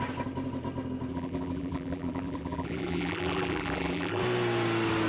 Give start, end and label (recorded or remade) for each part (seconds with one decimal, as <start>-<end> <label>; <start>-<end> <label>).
0.0-1.1 recorded; 1.1-4.2 remade; 4.2-5.1 recorded